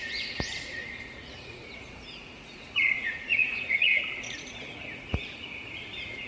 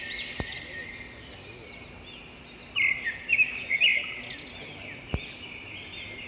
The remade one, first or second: first